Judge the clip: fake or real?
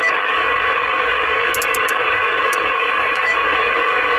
fake